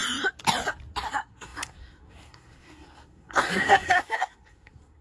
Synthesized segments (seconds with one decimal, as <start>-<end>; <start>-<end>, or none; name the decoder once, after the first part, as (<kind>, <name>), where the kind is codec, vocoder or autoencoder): 1.1-5.0 (codec, SNAC)